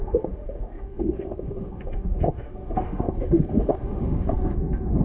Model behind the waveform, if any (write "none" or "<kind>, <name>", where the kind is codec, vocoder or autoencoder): autoencoder, DAC-VAE